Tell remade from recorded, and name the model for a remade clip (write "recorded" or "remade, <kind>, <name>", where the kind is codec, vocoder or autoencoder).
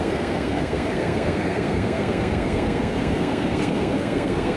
remade, codec, SNAC